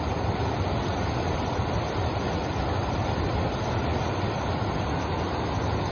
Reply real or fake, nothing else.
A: real